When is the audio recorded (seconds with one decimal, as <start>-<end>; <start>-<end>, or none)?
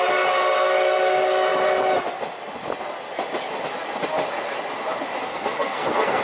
0.0-5.3